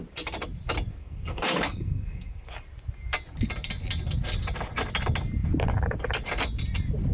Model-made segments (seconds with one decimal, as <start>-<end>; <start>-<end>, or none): 1.0-2.5